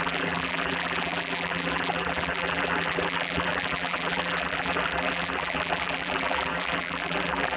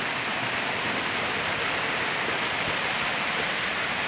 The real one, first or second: second